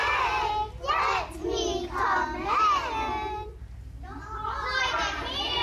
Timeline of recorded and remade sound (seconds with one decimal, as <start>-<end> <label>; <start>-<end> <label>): 0.0-5.6 recorded